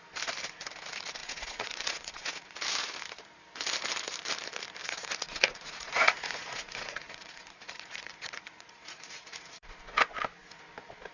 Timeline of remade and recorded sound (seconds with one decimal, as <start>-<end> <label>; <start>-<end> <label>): 0.0-1.2 recorded; 1.2-2.6 remade; 2.6-4.8 recorded; 4.8-9.8 remade; 9.8-11.1 recorded